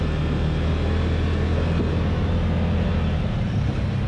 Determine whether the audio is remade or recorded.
recorded